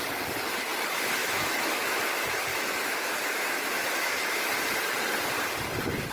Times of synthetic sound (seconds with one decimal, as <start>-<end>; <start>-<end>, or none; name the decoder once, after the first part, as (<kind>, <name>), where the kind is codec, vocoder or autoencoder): 1.2-2.0 (autoencoder, DAC-VAE); 2.5-4.5